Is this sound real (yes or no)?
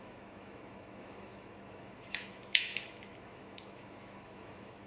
no